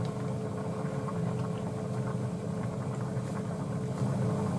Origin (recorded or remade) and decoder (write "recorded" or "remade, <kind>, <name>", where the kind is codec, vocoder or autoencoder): recorded